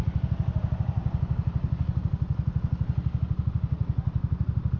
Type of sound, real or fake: real